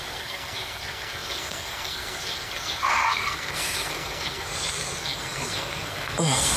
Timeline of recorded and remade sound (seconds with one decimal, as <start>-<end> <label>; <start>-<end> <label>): 0.0-6.6 remade